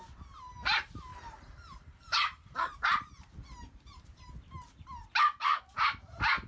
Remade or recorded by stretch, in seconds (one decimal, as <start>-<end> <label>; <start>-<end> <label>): 0.0-1.1 recorded; 1.1-4.3 remade; 4.3-6.5 recorded

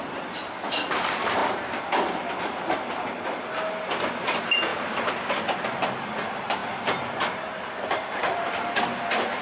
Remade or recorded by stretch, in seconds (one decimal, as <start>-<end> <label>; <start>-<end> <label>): 0.0-4.7 recorded; 4.7-5.3 remade; 5.3-9.4 recorded

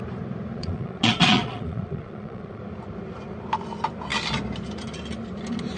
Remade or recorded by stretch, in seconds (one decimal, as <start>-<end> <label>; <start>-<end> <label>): 0.0-0.5 recorded; 0.5-2.6 remade; 2.6-5.8 recorded

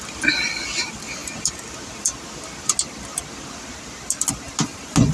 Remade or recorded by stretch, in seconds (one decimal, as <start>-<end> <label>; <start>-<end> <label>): 0.0-5.1 recorded

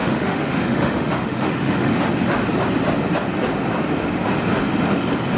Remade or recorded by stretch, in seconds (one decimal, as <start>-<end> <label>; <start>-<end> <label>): 0.0-1.9 remade; 1.9-5.4 recorded

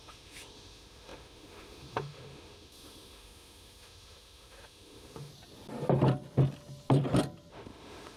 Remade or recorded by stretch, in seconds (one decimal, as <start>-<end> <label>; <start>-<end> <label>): 0.0-5.3 remade; 5.3-7.5 recorded; 7.5-8.2 remade